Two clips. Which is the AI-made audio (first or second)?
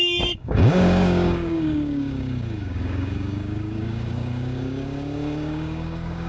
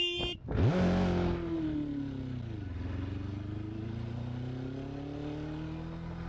first